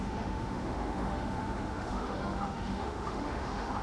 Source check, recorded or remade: remade